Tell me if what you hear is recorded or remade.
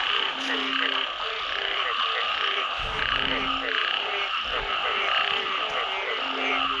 recorded